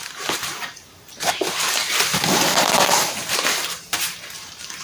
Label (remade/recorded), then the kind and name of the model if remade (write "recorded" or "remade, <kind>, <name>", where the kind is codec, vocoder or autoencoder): remade, vocoder, BigVGAN v2